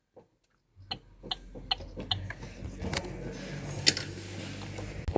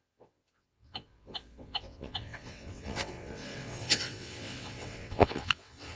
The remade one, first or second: second